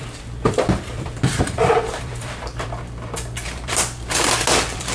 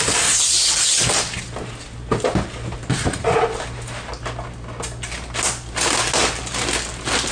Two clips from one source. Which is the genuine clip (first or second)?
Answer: second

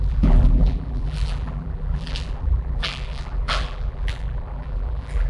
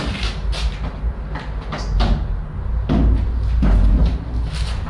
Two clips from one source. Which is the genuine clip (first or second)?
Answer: second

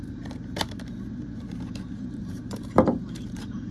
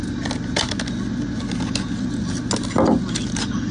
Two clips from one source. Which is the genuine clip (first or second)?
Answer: second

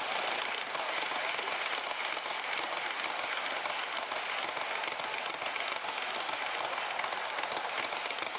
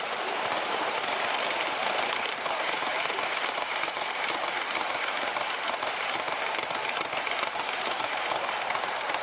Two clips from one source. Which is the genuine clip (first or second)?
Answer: first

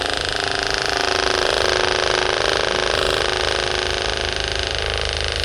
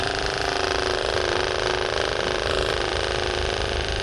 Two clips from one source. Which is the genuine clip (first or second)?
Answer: first